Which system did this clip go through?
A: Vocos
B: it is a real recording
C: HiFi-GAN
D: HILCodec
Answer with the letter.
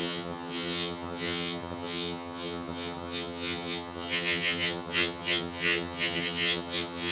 C